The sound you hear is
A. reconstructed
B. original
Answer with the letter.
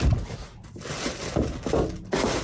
B